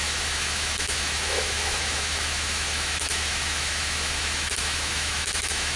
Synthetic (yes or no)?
yes